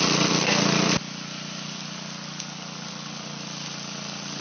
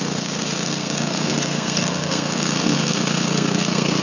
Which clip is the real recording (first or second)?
first